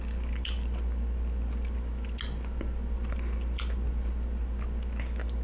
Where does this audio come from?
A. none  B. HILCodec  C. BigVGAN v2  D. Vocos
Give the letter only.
A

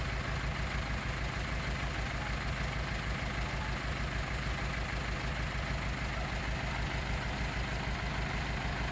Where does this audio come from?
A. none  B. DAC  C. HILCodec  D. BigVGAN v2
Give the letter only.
A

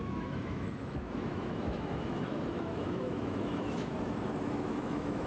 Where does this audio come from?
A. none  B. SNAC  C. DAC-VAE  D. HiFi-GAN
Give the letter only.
C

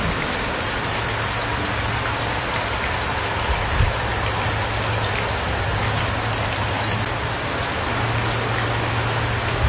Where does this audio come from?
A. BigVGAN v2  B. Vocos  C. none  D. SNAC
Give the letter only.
C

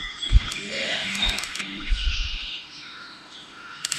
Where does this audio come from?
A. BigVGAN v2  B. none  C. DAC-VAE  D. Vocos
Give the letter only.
C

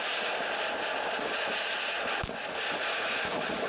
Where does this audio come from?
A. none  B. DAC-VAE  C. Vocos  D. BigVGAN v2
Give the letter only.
A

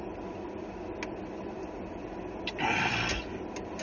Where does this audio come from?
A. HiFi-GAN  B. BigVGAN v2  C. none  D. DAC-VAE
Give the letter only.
C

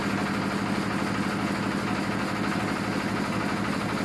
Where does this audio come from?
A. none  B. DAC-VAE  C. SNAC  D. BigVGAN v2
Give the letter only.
A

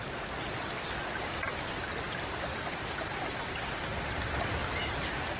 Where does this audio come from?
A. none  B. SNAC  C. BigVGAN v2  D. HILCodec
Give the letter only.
C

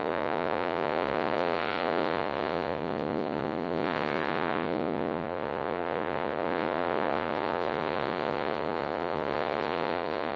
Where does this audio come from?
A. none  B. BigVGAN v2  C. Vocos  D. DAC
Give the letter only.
C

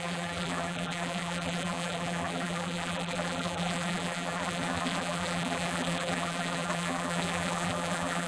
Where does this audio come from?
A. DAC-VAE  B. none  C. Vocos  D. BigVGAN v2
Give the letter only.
D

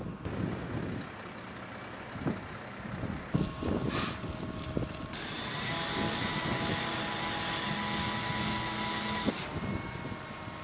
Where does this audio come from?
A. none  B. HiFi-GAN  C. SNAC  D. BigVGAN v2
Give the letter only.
A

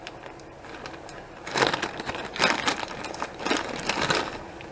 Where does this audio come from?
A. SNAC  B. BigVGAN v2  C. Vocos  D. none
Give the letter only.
D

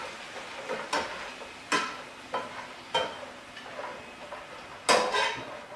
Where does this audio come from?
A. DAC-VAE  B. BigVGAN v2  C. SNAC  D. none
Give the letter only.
D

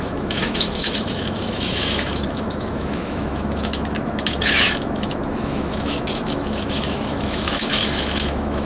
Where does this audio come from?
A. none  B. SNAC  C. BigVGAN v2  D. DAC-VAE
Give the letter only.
D